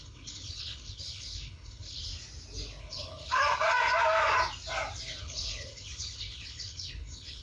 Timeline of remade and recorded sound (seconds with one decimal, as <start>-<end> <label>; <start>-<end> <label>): 0.0-2.1 remade; 2.1-2.8 recorded; 2.8-3.4 remade; 3.4-5.2 recorded; 5.2-7.4 remade